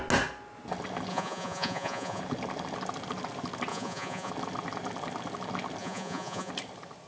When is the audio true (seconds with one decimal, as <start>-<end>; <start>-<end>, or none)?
0.0-1.1; 2.2-3.7; 4.3-5.8; 6.5-7.1

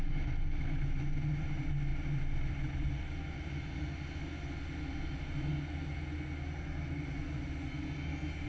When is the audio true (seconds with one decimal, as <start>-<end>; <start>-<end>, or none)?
0.0-8.5

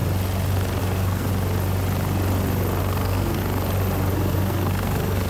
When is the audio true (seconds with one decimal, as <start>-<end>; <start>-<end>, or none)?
0.0-0.8; 1.3-2.8; 3.4-4.1

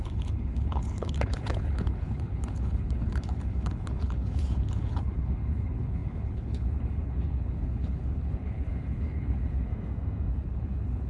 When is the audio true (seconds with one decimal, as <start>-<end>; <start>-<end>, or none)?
9.7-10.3

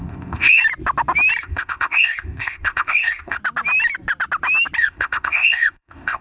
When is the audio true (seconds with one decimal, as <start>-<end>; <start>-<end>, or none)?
0.6-1.4; 3.4-4.8